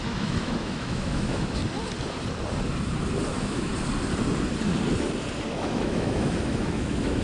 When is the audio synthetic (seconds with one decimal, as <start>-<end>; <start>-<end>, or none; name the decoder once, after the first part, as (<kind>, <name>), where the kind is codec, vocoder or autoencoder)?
0.0-1.6 (autoencoder, DAC-VAE); 3.3-3.7; 5.5-7.2